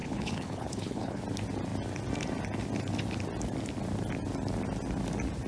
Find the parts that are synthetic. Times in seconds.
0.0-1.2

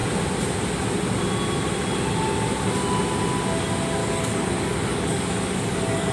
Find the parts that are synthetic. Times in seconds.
4.0-6.1

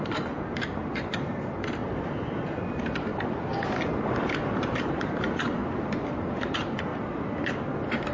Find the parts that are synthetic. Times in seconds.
0.0-1.8; 2.7-3.1; 4.5-5.6; 6.2-6.9; 7.5-8.1

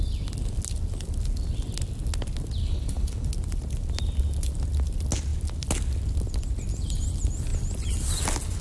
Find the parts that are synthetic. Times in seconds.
2.6-3.3

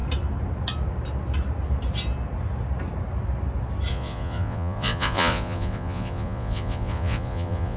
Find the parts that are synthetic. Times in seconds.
3.9-7.8

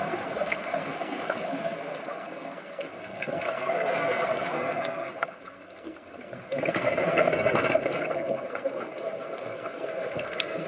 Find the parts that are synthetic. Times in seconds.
0.0-10.7

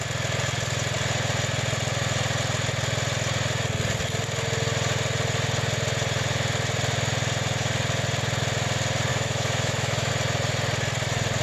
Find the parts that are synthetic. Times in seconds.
9.1-10.1

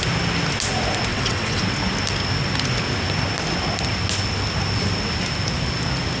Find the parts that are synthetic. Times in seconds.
1.1-1.6